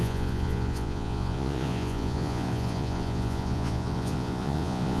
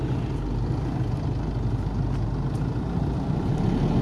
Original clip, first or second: second